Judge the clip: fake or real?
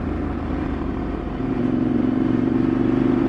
fake